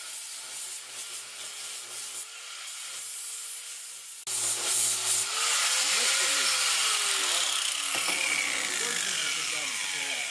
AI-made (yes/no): no